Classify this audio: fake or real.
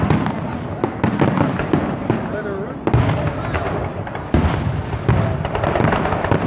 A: real